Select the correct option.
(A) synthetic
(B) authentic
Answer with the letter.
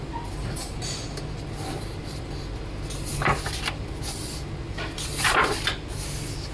B